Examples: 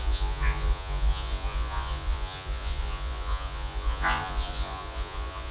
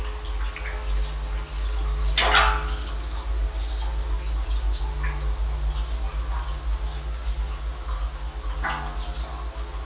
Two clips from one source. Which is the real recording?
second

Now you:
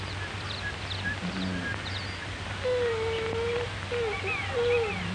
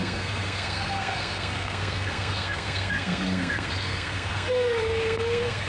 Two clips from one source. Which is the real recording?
first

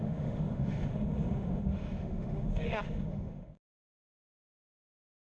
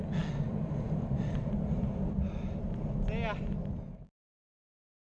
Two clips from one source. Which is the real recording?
second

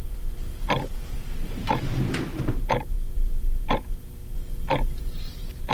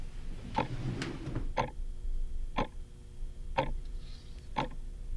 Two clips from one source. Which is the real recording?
second